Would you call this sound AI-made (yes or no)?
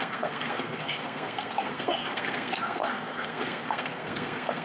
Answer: yes